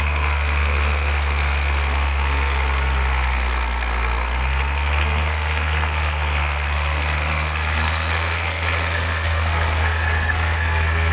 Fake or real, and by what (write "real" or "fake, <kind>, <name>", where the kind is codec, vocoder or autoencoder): fake, codec, SNAC